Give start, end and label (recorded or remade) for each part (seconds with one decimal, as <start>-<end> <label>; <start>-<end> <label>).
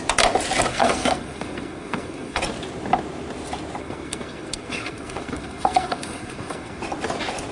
0.0-0.7 recorded; 0.7-2.4 remade; 2.4-3.8 recorded; 3.8-6.8 remade; 6.8-7.5 recorded